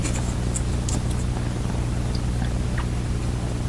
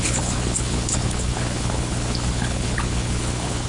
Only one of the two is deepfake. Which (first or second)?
second